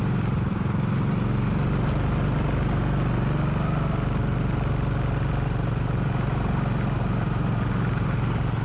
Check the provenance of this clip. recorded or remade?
recorded